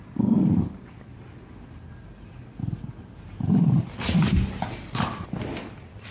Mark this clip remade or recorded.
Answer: recorded